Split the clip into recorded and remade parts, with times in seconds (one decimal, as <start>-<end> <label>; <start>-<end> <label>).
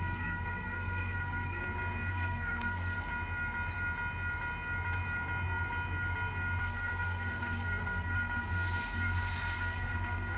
0.0-1.6 remade; 1.6-2.1 recorded; 2.1-3.1 remade; 3.1-6.6 recorded; 6.6-10.4 remade